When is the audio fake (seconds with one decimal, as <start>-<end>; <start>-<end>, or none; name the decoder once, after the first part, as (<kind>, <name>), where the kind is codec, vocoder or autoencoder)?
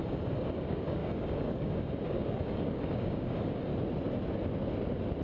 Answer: 0.0-3.7 (codec, DAC)